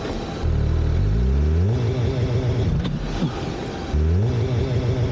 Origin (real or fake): real